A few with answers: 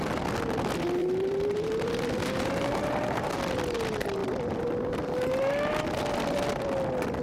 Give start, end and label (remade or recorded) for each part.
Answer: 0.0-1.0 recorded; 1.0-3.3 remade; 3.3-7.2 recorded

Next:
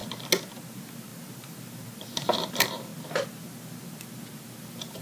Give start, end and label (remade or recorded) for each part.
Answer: 0.0-0.7 recorded; 0.7-2.9 remade; 2.9-4.6 recorded; 4.6-5.0 remade